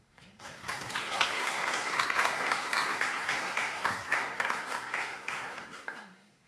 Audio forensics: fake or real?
fake